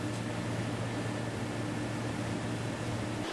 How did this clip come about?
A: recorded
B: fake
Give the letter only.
A